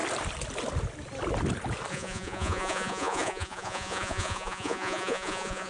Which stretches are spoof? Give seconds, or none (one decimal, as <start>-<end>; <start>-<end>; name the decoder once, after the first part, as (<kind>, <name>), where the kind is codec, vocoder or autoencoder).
1.9-5.7 (vocoder, Vocos)